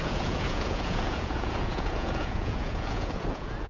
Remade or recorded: remade